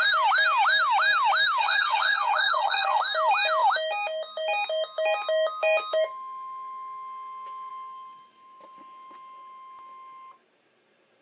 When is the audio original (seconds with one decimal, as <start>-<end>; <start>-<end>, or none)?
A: 0.0-1.6; 3.0-11.2